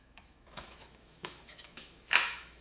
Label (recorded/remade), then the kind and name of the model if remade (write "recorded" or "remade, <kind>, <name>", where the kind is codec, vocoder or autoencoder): remade, autoencoder, DAC-VAE